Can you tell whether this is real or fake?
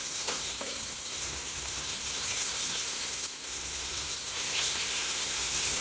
fake